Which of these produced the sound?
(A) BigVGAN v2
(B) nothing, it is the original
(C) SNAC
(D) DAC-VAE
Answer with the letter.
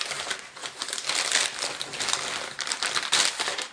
B